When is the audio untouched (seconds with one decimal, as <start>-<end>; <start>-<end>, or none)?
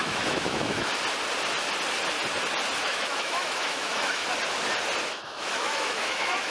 0.9-2.8; 4.2-5.0